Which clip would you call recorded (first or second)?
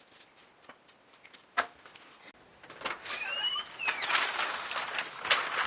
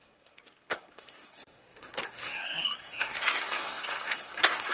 first